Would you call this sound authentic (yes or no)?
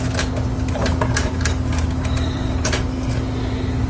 yes